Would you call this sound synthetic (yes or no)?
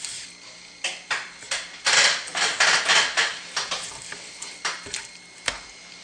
no